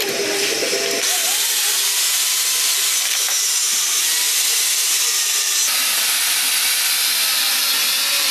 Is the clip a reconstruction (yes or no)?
no